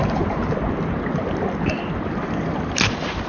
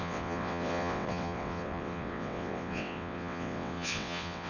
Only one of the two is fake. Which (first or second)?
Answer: second